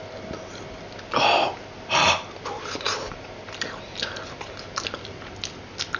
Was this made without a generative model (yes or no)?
yes